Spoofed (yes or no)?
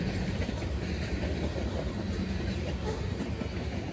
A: no